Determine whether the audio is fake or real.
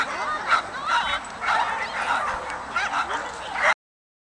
real